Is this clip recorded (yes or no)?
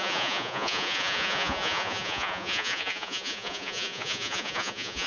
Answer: no